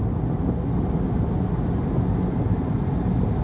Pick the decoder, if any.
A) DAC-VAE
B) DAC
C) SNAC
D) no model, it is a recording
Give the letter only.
D